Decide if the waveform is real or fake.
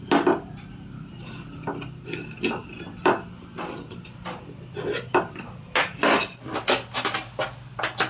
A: real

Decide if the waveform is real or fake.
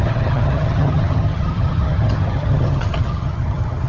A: fake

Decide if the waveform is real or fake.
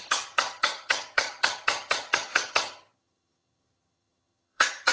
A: fake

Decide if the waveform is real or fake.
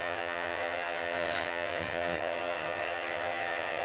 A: fake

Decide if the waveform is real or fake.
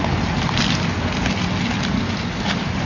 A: real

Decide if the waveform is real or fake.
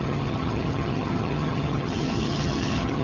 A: fake